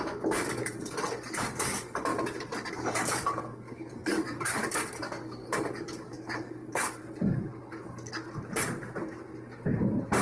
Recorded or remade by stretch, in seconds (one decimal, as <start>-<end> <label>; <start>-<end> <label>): 0.0-2.1 remade; 2.1-2.7 recorded; 2.7-7.0 remade; 7.0-10.2 recorded